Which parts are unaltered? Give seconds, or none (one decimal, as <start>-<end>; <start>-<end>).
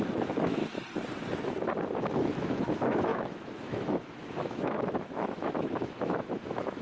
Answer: 0.6-2.0